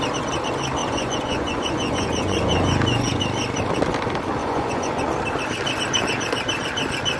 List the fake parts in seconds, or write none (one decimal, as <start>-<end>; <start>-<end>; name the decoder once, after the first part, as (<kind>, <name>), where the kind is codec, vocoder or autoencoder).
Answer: 0.8-3.2 (vocoder, Vocos); 4.4-5.1